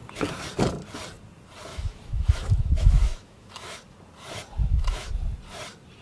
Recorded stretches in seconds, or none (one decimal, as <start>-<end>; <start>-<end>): 0.0-1.7; 3.8-4.6; 5.1-6.0